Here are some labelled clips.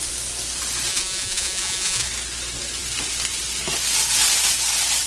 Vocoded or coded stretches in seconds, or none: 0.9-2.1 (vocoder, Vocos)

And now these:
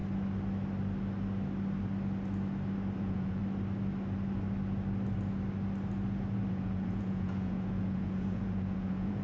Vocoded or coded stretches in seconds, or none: 3.0-3.4 (vocoder, Vocos); 6.5-9.2

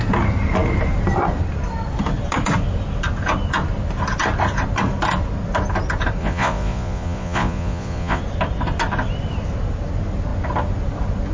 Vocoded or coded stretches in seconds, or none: 6.2-8.2 (vocoder, Vocos)

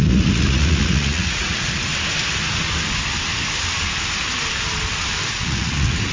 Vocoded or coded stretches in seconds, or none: 0.0-1.9 (vocoder, Vocos); 5.3-6.1

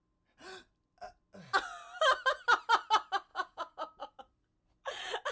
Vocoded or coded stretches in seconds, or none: 3.3-4.2 (vocoder, Vocos)

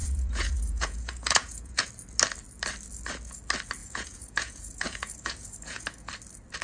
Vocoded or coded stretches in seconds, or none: 0.0-1.9 (vocoder, Vocos); 3.8-6.1

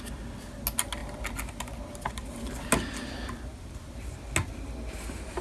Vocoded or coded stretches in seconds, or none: none

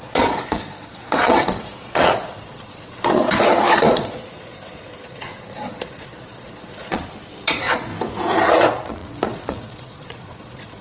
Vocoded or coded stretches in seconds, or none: 0.0-7.9 (vocoder, Vocos); 8.5-10.8